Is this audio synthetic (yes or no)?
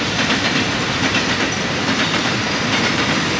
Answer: yes